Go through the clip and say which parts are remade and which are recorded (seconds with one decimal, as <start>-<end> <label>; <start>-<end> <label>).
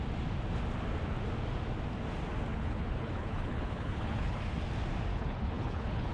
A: 0.0-2.5 recorded; 2.5-4.4 remade; 4.4-5.1 recorded; 5.1-6.1 remade